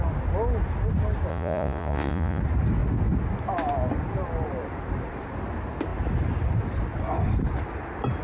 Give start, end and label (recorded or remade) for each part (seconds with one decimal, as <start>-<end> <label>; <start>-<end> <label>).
0.0-1.3 recorded; 1.3-2.4 remade; 2.4-8.2 recorded